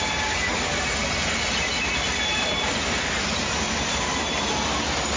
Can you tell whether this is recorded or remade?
recorded